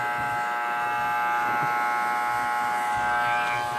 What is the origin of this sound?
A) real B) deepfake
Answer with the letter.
B